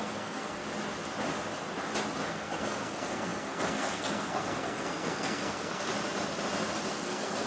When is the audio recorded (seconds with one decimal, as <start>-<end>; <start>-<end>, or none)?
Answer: 0.6-2.3; 5.9-6.9